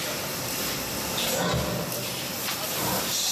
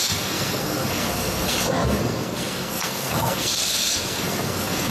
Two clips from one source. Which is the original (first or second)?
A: first